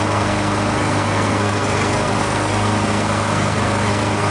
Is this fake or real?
fake